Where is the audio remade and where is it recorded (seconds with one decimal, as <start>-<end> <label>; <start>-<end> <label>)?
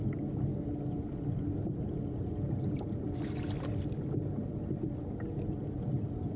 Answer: 0.0-0.5 remade; 0.5-2.7 recorded; 2.7-6.4 remade